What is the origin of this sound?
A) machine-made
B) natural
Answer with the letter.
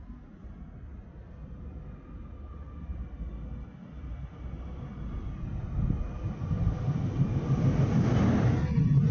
B